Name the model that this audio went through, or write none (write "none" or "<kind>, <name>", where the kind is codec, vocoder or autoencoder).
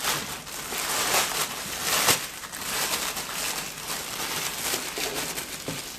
none